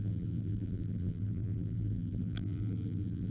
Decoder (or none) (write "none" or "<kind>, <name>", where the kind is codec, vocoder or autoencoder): vocoder, BigVGAN v2